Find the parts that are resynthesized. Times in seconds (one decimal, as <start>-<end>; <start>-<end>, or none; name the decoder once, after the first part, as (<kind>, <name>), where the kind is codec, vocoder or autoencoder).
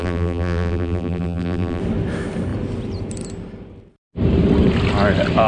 0.0-1.8 (vocoder, BigVGAN v2)